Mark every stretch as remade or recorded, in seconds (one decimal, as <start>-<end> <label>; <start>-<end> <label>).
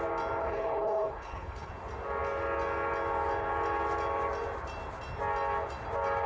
0.0-0.4 recorded; 0.4-1.7 remade; 1.7-6.3 recorded